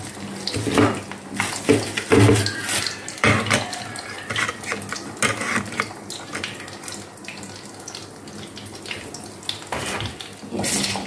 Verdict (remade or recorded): recorded